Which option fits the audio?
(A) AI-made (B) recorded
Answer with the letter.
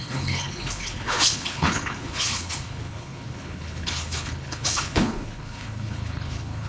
A